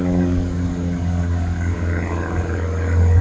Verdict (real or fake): fake